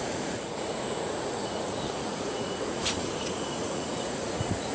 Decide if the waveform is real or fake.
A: fake